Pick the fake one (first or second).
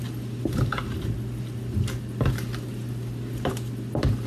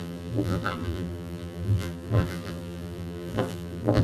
second